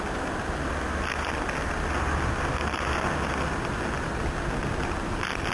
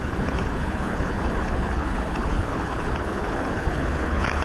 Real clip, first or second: first